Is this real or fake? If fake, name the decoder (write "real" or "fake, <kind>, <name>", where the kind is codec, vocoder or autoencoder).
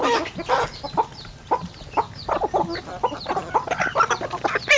real